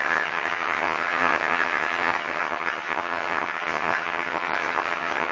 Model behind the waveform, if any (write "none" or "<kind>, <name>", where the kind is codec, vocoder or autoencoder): vocoder, HiFi-GAN